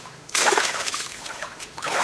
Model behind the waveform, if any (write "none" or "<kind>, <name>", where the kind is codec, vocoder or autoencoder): autoencoder, DAC-VAE